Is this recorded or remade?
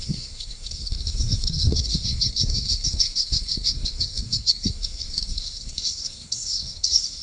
remade